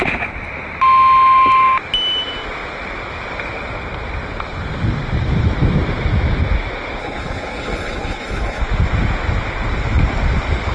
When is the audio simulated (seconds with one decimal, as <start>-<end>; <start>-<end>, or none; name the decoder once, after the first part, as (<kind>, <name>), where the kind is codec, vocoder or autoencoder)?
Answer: 7.0-8.6 (codec, HILCodec)